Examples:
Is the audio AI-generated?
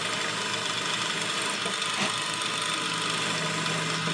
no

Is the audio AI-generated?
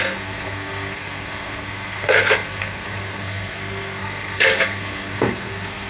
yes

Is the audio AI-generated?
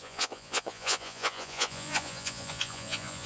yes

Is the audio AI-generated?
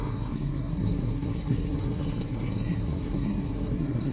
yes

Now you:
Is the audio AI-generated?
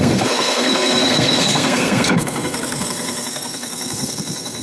yes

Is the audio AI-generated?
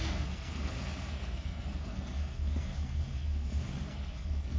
yes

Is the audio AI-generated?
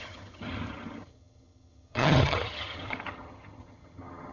yes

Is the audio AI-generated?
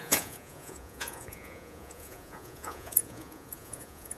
yes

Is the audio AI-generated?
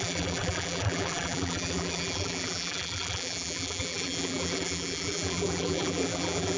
yes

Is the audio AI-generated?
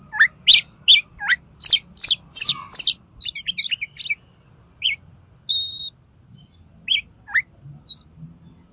no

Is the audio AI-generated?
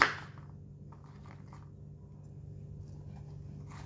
no